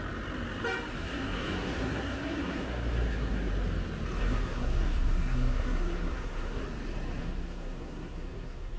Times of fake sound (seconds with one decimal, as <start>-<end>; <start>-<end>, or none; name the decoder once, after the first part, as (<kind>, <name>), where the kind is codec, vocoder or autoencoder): 0.9-3.5 (codec, SNAC); 4.2-6.6; 7.2-8.8

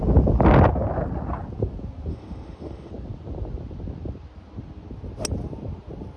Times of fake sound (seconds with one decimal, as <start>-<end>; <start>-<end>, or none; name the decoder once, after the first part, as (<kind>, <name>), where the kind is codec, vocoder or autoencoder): 2.1-2.9 (autoencoder, DAC-VAE)

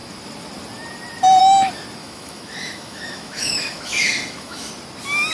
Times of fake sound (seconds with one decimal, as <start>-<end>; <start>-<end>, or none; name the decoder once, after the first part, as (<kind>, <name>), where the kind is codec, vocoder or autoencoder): 2.0-4.7 (autoencoder, DAC-VAE)

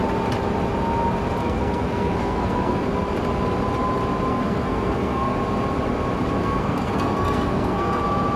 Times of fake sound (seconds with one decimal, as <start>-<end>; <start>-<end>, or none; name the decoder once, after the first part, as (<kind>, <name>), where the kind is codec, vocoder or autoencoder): 1.4-2.8 (codec, SNAC); 4.3-5.4; 6.4-8.0